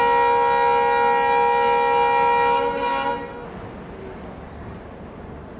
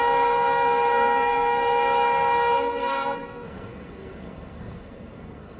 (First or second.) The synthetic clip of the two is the second